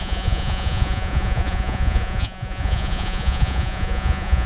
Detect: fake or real fake